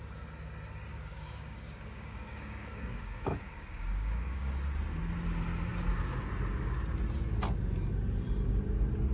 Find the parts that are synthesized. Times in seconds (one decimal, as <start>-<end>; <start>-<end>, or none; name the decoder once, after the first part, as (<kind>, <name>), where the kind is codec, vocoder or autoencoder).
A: 0.9-4.5 (codec, DAC)